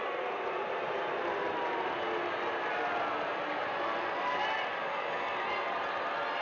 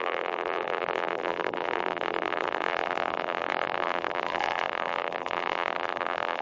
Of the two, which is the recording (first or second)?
first